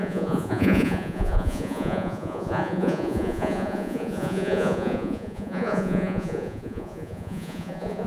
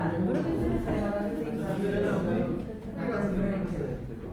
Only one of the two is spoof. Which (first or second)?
first